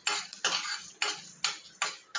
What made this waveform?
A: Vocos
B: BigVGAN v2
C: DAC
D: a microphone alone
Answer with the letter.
D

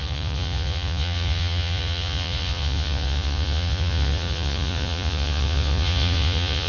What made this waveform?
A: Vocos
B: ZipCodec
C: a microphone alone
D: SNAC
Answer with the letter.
A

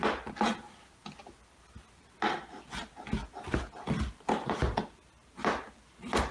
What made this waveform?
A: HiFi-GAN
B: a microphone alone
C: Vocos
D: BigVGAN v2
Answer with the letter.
B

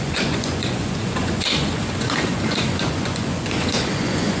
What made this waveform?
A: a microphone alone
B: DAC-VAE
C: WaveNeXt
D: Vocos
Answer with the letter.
D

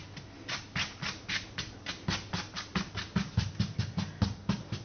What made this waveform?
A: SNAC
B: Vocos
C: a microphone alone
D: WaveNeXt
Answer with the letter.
C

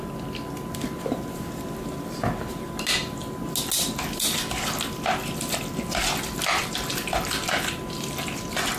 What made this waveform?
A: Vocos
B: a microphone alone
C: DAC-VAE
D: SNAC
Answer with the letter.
B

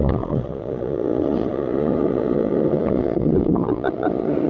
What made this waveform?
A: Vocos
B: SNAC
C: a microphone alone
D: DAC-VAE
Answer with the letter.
A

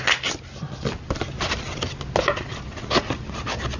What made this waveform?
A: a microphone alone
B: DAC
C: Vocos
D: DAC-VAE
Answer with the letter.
A